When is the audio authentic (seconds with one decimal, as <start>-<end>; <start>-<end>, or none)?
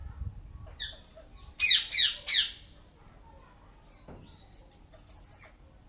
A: 0.0-5.9